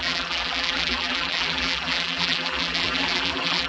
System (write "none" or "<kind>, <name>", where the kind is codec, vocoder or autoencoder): vocoder, BigVGAN v2